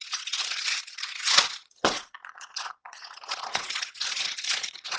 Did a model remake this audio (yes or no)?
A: yes